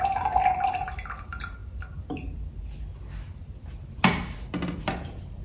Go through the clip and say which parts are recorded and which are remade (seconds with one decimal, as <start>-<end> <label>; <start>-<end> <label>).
0.0-5.4 recorded